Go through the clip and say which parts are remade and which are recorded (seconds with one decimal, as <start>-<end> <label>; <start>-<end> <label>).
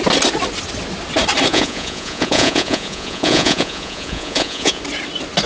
0.0-1.5 recorded; 1.5-4.8 remade; 4.8-5.5 recorded